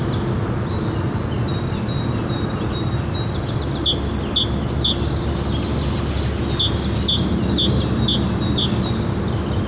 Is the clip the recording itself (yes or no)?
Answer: yes